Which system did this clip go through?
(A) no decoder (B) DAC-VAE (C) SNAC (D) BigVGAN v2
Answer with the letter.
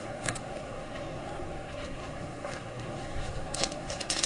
C